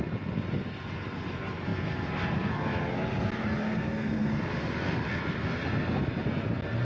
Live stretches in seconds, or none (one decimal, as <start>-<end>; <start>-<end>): 0.0-3.6; 4.4-6.8

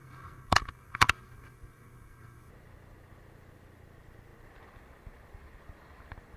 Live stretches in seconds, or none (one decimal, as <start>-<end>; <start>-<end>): 2.5-6.4

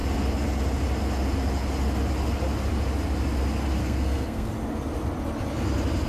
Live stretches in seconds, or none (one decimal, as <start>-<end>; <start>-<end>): 0.0-3.8; 4.5-6.1

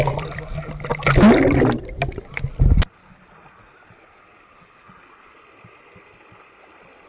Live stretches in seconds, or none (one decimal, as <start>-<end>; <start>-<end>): 0.0-7.1